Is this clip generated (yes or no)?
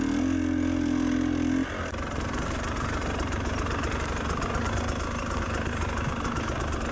no